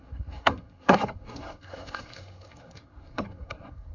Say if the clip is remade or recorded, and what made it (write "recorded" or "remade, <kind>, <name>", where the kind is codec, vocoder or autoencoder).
remade, codec, SNAC